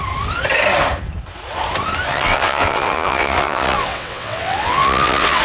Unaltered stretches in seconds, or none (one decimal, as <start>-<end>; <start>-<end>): 0.0-2.1